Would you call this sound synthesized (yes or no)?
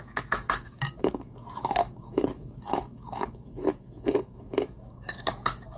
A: yes